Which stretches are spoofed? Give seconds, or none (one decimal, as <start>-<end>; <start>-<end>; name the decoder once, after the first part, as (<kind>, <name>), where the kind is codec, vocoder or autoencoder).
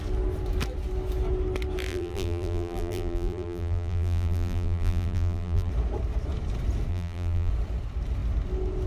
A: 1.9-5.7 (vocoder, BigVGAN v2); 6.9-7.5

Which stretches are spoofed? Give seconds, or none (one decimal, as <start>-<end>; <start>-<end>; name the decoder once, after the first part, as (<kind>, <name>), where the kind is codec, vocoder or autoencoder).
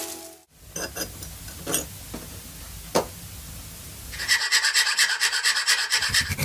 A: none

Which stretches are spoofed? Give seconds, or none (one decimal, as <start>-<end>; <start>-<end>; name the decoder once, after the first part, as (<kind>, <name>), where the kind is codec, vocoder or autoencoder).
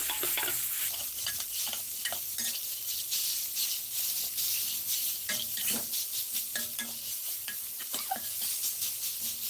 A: none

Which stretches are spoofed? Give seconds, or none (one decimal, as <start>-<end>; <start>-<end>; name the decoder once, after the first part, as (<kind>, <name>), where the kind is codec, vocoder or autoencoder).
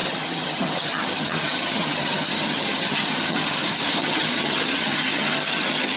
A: 0.0-3.6 (vocoder, HiFi-GAN); 4.0-6.0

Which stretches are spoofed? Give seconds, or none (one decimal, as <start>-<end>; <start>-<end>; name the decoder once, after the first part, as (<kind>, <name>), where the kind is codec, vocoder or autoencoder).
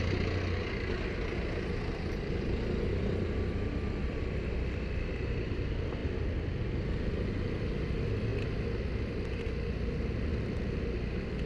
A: none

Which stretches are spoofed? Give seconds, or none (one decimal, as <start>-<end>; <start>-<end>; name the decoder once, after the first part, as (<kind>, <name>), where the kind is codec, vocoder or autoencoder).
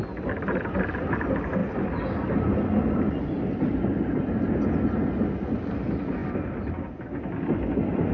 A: none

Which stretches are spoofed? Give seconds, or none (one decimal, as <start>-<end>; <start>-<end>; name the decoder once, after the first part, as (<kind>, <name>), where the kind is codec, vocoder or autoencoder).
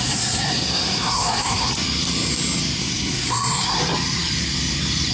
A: 0.0-1.7 (codec, SNAC); 2.8-3.8